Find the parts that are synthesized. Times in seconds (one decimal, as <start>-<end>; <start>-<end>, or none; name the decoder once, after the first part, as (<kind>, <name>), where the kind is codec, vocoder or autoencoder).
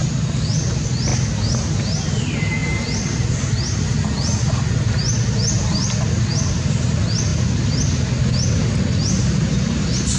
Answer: none